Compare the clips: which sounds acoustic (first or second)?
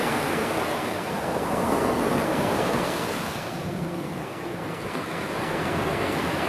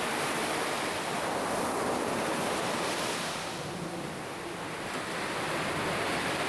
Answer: second